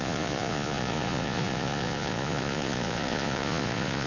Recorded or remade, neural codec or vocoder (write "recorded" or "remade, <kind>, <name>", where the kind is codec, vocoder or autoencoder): remade, vocoder, Vocos